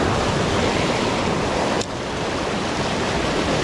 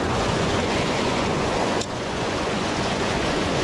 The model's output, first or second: second